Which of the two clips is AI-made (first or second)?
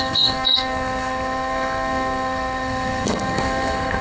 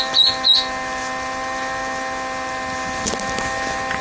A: first